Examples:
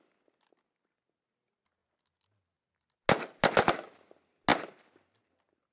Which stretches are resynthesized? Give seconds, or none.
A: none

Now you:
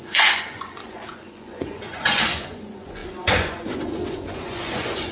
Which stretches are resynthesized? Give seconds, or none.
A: 0.0-5.1 (vocoder, Vocos)

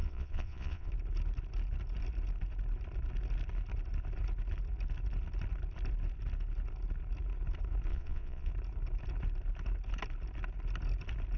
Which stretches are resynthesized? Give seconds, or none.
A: 0.0-0.9 (vocoder, Vocos); 7.9-8.5

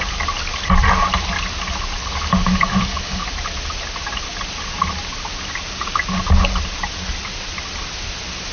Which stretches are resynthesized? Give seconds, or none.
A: 2.0-3.3 (codec, DAC)

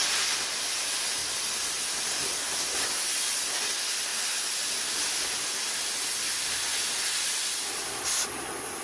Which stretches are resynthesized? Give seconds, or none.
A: none

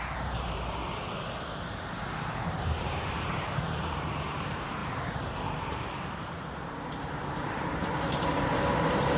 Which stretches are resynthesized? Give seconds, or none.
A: 0.0-0.8 (vocoder, BigVGAN v2); 2.3-9.2